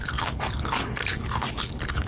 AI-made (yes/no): yes